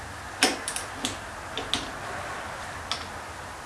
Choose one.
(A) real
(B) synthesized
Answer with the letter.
A